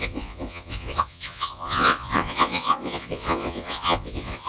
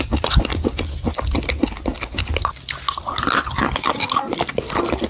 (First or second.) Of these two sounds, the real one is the second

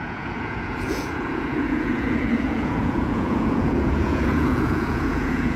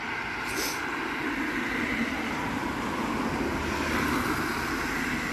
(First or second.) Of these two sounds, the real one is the second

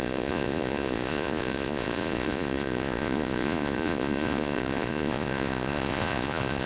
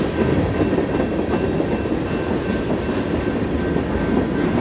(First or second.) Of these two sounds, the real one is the second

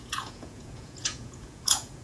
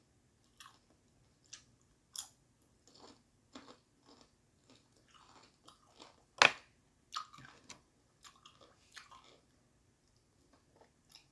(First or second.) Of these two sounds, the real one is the second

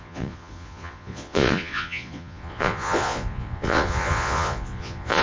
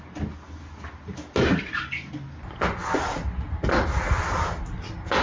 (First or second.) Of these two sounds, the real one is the second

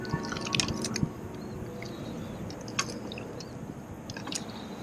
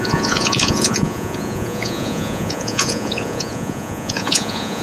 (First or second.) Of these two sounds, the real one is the first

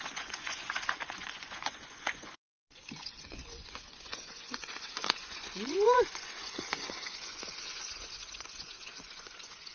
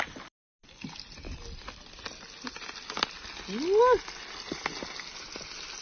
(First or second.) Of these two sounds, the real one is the second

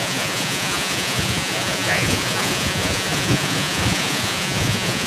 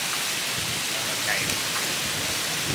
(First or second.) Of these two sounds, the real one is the second